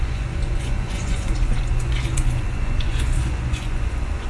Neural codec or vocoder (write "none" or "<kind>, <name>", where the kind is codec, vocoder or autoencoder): vocoder, Vocos